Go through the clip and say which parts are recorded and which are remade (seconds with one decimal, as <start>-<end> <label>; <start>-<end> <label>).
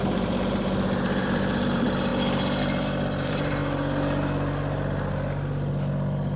0.0-2.1 remade; 2.1-2.6 recorded; 2.6-3.6 remade; 3.6-6.4 recorded